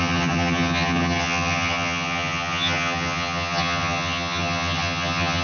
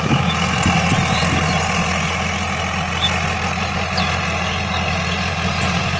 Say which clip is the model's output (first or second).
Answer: first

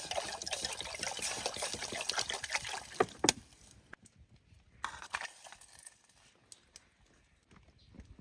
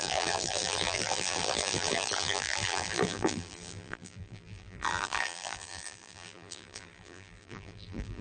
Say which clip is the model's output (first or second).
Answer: second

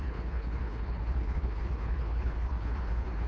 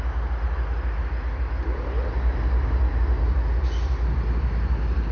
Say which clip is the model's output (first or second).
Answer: first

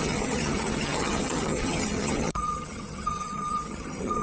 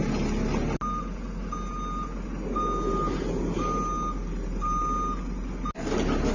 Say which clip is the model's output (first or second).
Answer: first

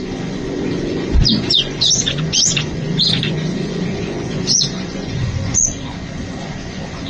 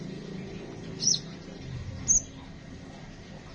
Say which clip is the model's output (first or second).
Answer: first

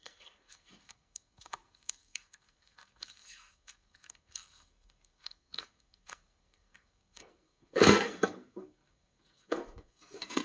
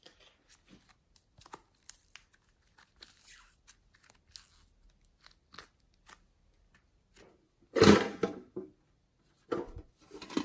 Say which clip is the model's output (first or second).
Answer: first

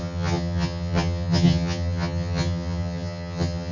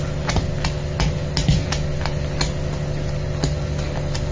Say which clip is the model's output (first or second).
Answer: first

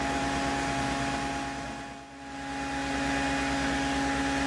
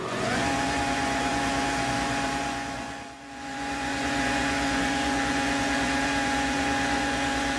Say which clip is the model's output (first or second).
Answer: second